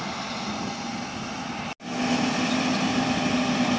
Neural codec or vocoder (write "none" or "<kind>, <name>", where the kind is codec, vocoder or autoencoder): none